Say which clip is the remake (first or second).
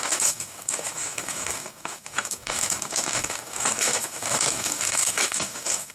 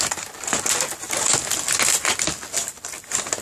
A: first